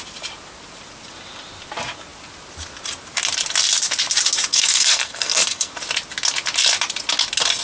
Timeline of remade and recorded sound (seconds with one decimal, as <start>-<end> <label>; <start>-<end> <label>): 0.0-4.5 recorded; 4.5-5.7 remade; 5.7-7.6 recorded